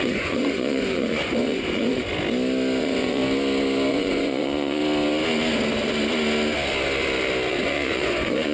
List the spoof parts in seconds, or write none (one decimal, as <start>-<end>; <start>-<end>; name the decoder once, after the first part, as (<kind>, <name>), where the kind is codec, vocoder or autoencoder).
0.0-2.0 (vocoder, Vocos); 2.8-3.2; 3.9-4.8; 7.5-8.5